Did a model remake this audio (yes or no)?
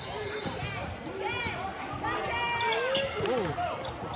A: no